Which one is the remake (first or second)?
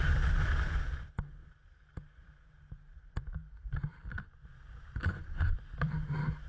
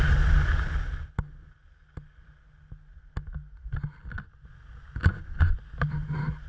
first